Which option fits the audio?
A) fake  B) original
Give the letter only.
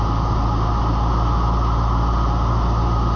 B